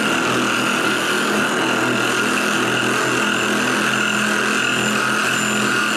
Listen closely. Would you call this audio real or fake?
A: real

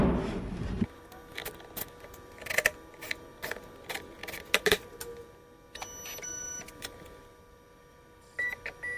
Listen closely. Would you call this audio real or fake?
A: real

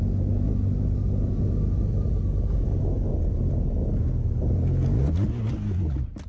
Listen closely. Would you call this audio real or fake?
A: real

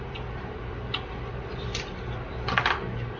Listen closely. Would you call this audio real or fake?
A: real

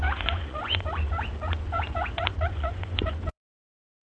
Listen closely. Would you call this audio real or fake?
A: fake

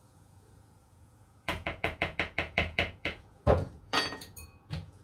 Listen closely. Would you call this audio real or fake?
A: fake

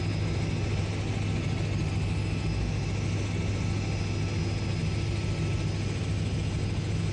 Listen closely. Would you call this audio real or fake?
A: real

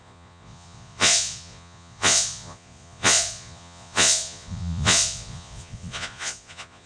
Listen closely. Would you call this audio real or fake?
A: fake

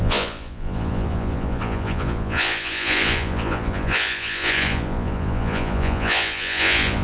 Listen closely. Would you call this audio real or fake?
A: fake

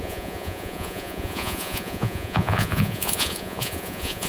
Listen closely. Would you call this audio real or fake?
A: fake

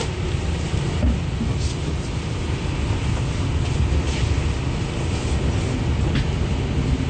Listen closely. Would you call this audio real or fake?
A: real